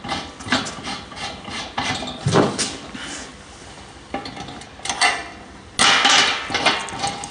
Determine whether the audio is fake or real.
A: real